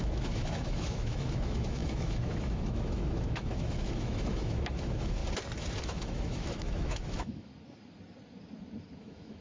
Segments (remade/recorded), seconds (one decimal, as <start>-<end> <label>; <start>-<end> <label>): 0.0-5.2 remade; 5.2-5.8 recorded; 5.8-7.5 remade; 7.5-9.0 recorded; 9.0-9.4 remade